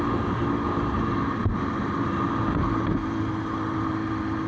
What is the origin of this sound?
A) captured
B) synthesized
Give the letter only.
A